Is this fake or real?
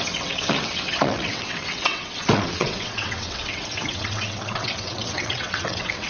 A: fake